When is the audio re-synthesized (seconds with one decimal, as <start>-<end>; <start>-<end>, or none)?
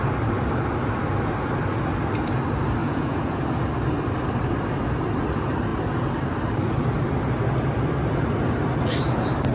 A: 2.8-3.4